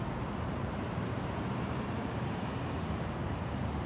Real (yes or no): no